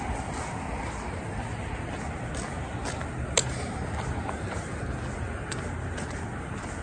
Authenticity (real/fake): real